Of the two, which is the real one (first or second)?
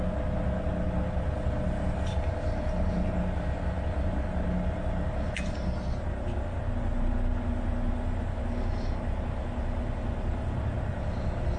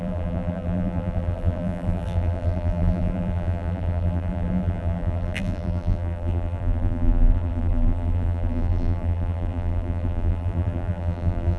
first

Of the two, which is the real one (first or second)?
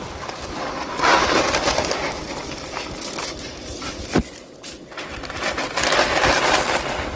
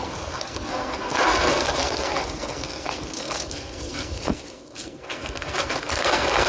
first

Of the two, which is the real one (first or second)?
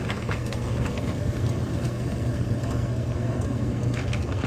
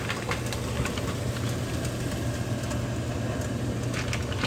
second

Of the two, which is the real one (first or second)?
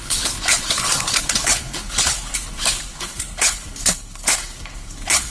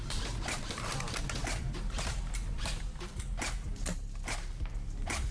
second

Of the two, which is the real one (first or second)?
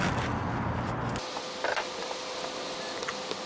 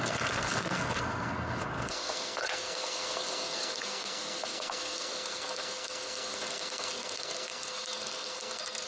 first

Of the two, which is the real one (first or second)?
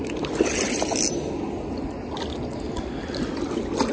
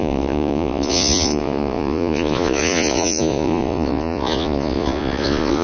first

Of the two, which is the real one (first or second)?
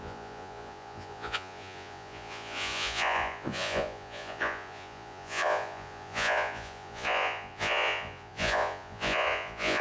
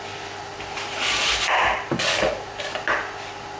second